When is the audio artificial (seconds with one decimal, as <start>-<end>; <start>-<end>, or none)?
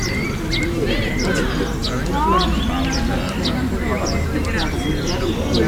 none